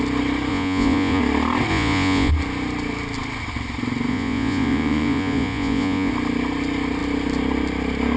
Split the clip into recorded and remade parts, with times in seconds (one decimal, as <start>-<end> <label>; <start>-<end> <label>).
0.0-0.5 recorded; 0.5-1.2 remade; 1.2-1.7 recorded; 1.7-2.3 remade; 2.3-4.1 recorded; 4.1-6.1 remade; 6.1-8.2 recorded